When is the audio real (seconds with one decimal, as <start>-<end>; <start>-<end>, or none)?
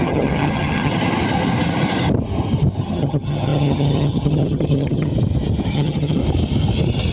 0.9-2.8; 5.1-5.7; 6.2-7.1